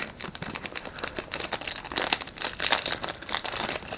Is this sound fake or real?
real